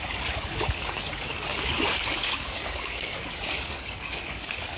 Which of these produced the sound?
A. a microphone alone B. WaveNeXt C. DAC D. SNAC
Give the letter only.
C